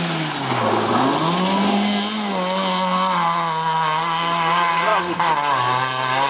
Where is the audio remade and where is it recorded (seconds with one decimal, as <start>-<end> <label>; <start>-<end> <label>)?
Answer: 0.0-6.3 recorded